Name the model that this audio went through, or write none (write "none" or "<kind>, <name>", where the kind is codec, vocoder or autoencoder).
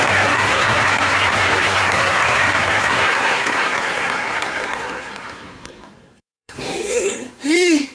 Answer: codec, SNAC